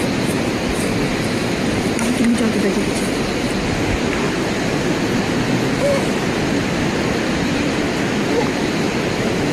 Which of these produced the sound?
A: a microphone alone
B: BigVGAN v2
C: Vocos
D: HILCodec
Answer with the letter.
A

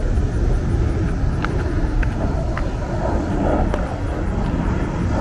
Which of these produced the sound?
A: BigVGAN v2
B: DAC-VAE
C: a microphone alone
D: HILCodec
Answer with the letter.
C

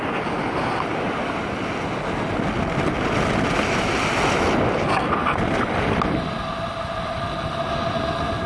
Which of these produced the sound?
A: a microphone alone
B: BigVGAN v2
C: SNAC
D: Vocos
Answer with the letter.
A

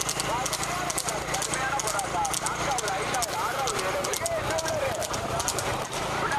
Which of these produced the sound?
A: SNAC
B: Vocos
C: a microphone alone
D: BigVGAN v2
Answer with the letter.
C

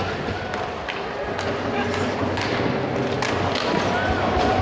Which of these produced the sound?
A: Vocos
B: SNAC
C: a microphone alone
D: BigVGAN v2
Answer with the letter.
C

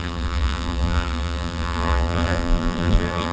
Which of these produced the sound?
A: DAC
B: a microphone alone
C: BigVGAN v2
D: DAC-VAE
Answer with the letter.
C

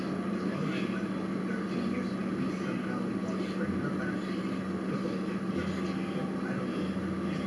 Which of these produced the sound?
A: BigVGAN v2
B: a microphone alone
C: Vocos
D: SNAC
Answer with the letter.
B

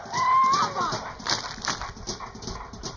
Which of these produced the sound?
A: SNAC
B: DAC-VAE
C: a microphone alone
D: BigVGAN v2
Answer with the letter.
C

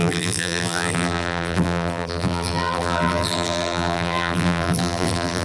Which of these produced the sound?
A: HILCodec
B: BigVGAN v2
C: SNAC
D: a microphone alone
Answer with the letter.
B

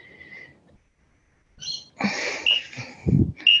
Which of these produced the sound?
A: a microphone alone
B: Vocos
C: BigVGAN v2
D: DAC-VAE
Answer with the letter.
A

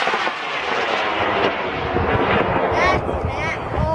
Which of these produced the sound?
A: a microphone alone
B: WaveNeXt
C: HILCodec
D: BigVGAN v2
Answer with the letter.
A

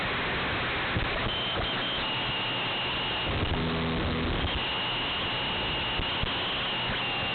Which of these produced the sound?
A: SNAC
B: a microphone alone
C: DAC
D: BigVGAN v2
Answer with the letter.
B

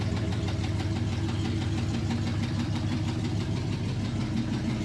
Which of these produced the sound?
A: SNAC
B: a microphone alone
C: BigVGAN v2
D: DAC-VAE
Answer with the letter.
C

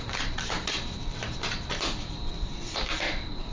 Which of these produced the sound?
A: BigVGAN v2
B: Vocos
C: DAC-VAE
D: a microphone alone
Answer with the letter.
A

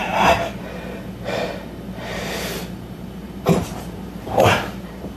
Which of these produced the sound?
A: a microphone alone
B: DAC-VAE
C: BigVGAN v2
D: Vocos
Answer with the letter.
C